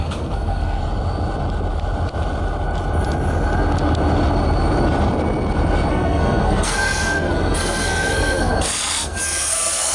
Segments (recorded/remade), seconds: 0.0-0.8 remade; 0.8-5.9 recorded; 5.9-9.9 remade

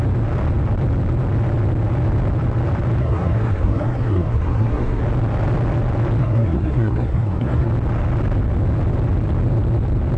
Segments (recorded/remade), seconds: 0.0-3.0 recorded; 3.0-5.0 remade; 5.0-6.2 recorded; 6.2-7.7 remade; 7.7-10.2 recorded

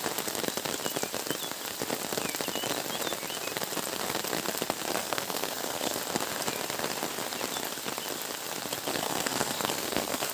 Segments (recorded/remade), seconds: 0.0-5.0 recorded; 5.0-6.0 remade; 6.0-8.9 recorded; 8.9-10.3 remade

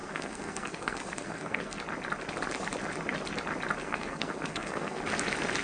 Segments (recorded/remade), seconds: 0.0-1.8 remade; 1.8-3.8 recorded; 3.8-5.0 remade; 5.0-5.6 recorded